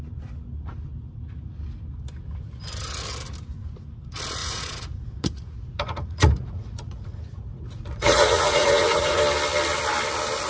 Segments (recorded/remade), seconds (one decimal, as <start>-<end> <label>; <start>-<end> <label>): 0.0-4.4 recorded; 4.4-9.2 remade; 9.2-10.5 recorded